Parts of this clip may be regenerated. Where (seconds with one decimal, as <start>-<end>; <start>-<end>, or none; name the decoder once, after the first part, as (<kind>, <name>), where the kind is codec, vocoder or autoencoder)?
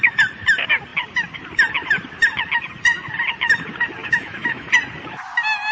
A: 4.0-4.7 (autoencoder, DAC-VAE)